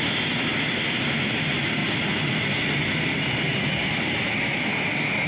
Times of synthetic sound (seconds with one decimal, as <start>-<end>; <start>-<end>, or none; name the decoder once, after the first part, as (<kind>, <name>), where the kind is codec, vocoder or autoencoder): none